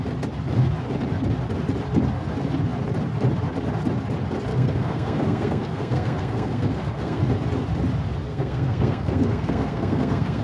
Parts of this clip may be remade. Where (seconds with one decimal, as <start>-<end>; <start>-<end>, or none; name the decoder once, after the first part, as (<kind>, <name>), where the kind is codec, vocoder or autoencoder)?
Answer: 4.5-7.2 (codec, SNAC); 8.3-10.4